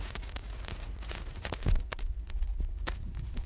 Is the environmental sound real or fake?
fake